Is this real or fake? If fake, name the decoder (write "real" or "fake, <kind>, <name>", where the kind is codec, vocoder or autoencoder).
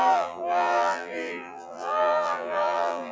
fake, vocoder, BigVGAN v2